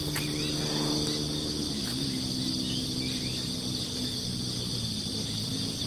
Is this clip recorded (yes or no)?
yes